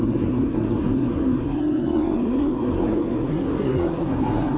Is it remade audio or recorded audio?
remade